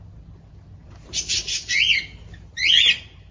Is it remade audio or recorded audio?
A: recorded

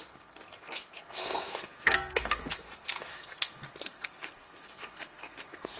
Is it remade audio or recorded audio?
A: remade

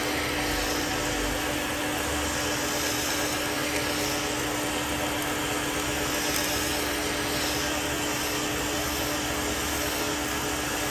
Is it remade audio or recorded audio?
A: recorded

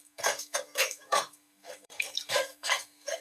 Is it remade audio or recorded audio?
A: remade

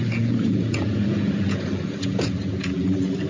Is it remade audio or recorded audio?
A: remade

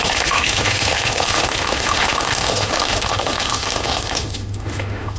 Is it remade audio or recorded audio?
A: remade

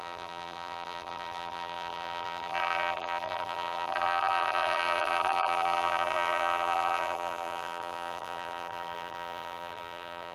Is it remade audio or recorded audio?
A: remade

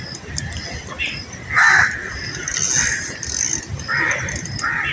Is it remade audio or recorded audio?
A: recorded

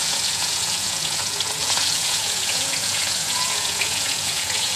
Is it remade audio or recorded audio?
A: remade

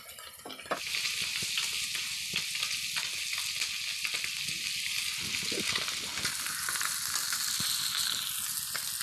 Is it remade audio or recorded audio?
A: recorded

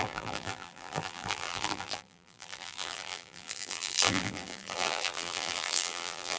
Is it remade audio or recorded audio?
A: remade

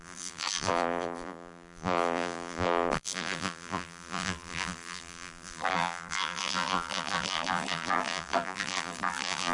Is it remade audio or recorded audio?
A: remade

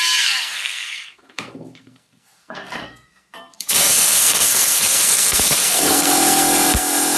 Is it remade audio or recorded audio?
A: remade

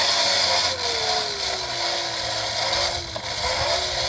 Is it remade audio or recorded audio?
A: recorded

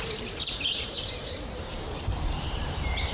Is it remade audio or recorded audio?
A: remade